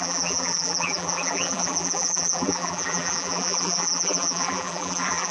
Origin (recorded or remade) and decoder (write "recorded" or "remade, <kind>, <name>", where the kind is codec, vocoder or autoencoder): remade, vocoder, BigVGAN v2